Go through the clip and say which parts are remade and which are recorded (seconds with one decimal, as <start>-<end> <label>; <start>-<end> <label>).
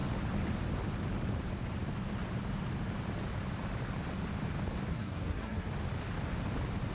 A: 0.0-4.9 recorded; 4.9-5.7 remade; 5.7-6.9 recorded